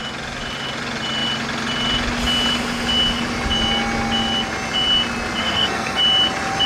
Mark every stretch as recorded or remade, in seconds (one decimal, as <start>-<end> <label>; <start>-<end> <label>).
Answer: 0.0-5.4 recorded; 5.4-6.0 remade; 6.0-6.7 recorded